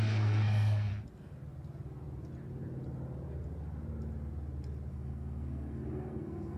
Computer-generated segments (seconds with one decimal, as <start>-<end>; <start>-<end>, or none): 0.0-0.9; 4.9-6.6